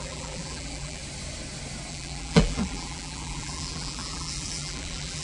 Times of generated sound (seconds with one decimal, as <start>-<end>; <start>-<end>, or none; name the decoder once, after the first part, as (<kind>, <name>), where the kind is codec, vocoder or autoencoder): 0.0-1.0 (vocoder, BigVGAN v2); 1.9-5.2